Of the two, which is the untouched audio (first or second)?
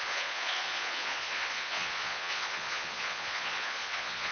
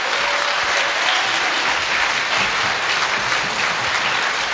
second